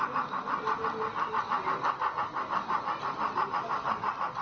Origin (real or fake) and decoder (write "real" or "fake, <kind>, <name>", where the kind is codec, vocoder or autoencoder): real